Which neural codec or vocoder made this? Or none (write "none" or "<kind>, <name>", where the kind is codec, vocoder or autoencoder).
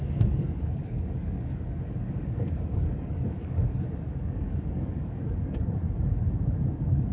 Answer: codec, DAC